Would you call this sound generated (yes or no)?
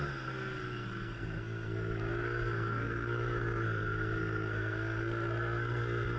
yes